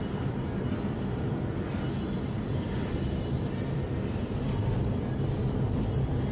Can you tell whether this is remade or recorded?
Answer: recorded